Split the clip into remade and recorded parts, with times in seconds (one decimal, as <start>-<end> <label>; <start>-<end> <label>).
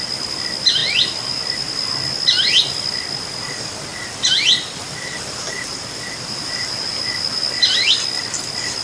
0.0-8.8 recorded